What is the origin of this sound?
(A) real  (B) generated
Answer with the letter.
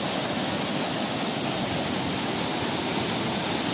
A